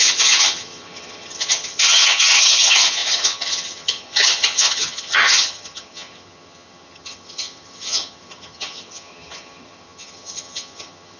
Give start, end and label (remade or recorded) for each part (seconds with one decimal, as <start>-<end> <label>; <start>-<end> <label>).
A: 0.0-11.2 remade